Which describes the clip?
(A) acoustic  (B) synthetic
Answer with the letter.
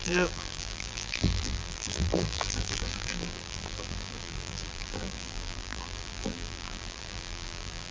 B